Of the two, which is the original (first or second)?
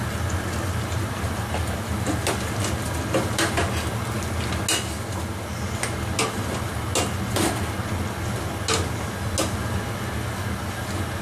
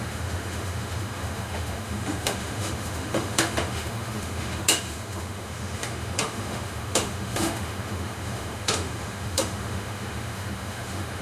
first